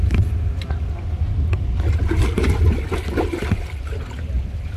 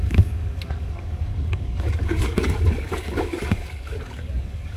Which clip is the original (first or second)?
first